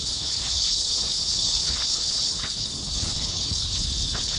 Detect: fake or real fake